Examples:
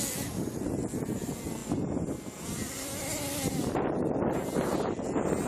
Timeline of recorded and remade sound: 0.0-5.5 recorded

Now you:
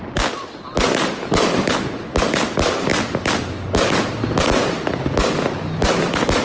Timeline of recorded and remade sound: 0.0-6.4 recorded

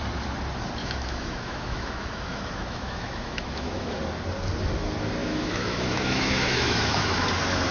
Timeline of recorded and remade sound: 0.0-0.8 recorded; 0.8-4.0 remade; 4.0-5.2 recorded; 5.2-7.3 remade; 7.3-7.7 recorded

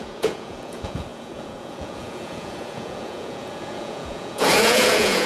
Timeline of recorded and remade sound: 0.0-5.3 remade